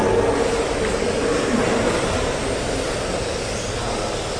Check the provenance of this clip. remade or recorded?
recorded